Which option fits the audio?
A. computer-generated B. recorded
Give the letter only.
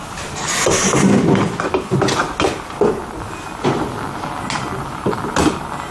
B